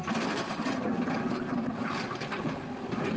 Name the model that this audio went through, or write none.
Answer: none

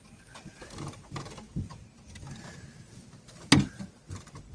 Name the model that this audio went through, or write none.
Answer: none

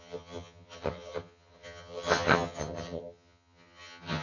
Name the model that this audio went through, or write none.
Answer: vocoder, HiFi-GAN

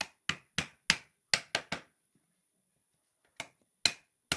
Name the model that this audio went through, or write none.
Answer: none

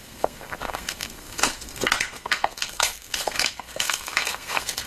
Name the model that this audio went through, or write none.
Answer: codec, SNAC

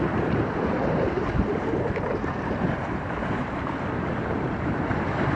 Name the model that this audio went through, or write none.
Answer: vocoder, BigVGAN v2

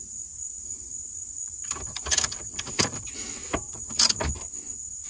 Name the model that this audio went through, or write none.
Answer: vocoder, BigVGAN v2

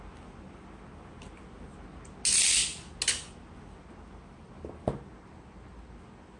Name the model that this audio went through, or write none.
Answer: none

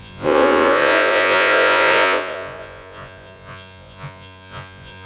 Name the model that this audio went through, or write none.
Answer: vocoder, Vocos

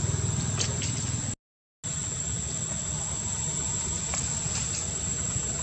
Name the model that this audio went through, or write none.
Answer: none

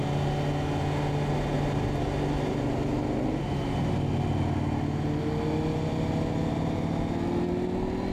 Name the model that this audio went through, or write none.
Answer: none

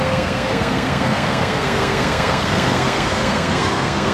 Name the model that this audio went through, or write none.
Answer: codec, SNAC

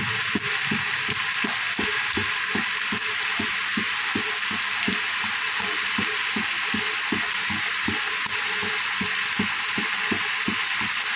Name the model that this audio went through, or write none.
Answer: none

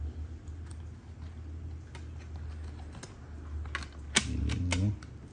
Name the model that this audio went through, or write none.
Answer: none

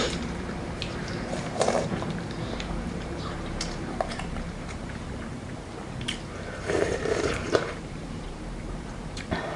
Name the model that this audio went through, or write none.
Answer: vocoder, BigVGAN v2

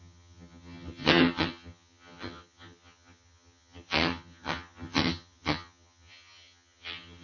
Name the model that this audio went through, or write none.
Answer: vocoder, HiFi-GAN